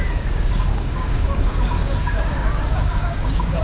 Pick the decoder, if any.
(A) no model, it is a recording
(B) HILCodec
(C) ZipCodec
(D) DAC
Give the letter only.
D